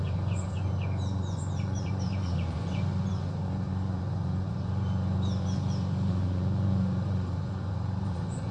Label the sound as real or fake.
fake